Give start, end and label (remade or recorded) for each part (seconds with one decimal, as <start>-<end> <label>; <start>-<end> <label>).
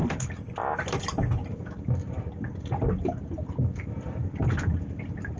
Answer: 0.0-5.4 recorded